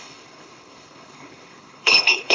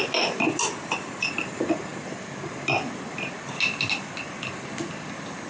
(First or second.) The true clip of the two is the second